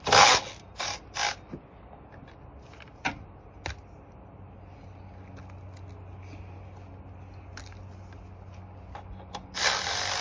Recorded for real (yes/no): yes